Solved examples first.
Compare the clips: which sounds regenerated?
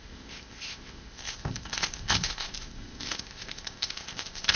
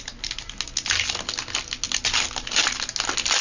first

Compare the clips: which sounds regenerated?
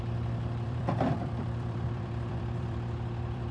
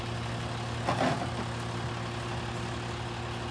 first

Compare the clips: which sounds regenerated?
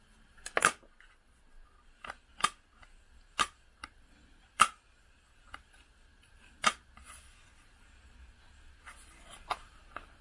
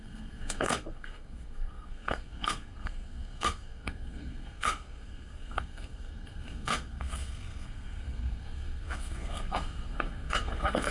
second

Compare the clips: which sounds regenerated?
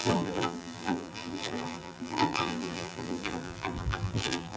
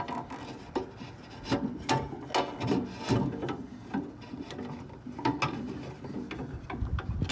first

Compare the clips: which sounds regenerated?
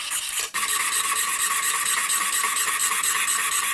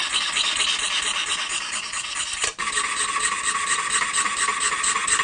first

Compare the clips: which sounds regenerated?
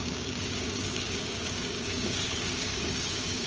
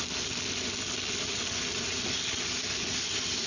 first